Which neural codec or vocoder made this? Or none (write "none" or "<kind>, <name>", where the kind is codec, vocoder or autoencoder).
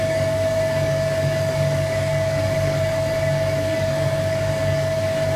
codec, DAC